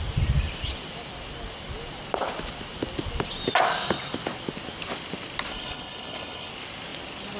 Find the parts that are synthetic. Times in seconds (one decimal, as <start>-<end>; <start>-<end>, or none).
5.5-6.5